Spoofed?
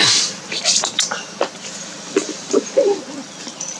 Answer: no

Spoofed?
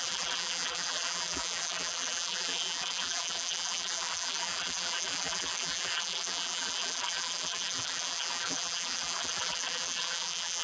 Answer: yes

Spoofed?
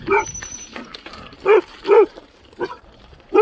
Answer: yes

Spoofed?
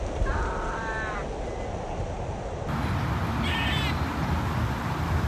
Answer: no